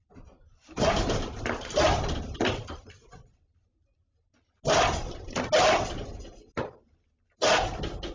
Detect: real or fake real